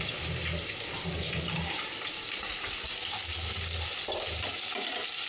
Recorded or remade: recorded